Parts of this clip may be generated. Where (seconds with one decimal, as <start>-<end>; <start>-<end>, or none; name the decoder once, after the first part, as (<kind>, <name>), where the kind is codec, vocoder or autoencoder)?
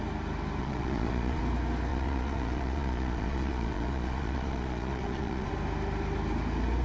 0.6-1.4 (vocoder, Vocos); 1.9-5.5